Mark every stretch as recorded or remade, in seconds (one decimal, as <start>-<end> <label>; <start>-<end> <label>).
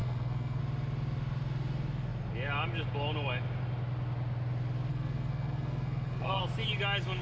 0.0-0.6 remade; 0.6-4.9 recorded; 4.9-6.4 remade; 6.4-7.2 recorded